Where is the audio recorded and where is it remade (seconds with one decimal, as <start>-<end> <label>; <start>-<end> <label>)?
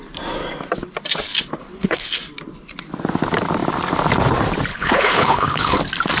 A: 0.0-1.6 recorded; 1.6-2.2 remade; 2.2-4.7 recorded; 4.7-5.8 remade; 5.8-6.2 recorded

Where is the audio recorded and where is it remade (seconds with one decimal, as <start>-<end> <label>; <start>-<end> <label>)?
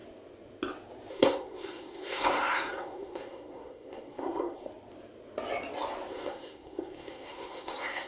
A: 0.0-1.1 recorded; 1.1-4.7 remade; 4.7-6.1 recorded; 6.1-8.1 remade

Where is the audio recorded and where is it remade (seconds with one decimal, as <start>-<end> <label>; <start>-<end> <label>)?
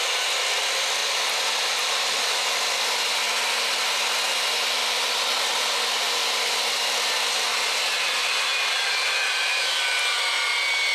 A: 0.0-1.0 recorded; 1.0-2.8 remade; 2.8-4.8 recorded; 4.8-6.7 remade; 6.7-8.2 recorded; 8.2-9.8 remade; 9.8-10.9 recorded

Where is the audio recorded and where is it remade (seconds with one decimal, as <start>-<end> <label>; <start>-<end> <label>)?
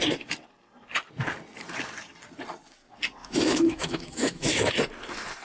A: 0.0-3.2 recorded; 3.2-4.7 remade; 4.7-5.4 recorded